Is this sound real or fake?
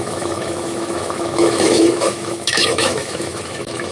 fake